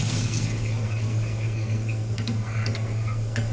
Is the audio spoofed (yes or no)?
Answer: yes